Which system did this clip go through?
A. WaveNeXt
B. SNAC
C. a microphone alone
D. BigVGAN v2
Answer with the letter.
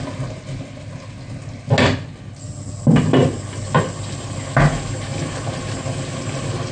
C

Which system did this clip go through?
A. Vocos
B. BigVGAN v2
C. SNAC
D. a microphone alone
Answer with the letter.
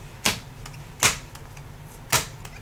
D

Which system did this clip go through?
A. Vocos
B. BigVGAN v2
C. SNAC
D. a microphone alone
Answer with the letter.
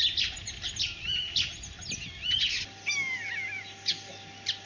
D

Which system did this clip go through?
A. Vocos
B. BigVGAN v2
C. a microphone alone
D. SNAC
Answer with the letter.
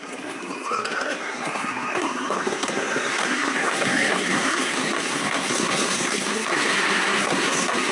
D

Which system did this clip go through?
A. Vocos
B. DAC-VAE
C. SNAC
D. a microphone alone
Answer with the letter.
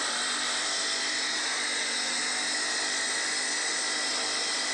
D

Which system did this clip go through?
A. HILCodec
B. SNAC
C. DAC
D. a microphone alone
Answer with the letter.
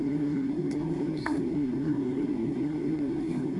B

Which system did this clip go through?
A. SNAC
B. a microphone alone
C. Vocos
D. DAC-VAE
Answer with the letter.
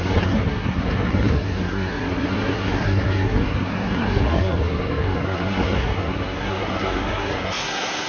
A